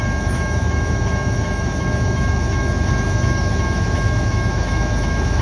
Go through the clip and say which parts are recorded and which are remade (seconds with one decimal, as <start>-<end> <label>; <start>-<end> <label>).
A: 0.0-5.4 remade